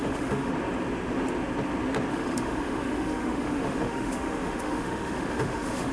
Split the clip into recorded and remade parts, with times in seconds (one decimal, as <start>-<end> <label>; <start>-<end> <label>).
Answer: 0.0-0.5 remade; 0.5-2.1 recorded; 2.1-5.9 remade